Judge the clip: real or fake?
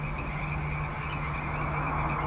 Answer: real